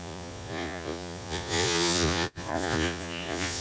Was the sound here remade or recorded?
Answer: remade